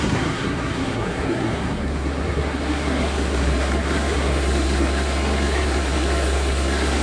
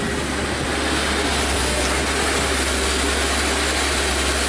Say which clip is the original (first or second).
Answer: second